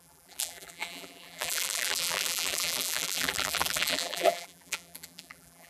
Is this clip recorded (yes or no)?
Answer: no